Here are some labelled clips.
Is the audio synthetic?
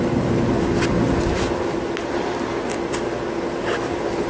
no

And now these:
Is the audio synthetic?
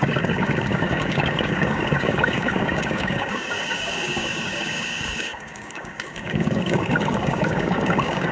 yes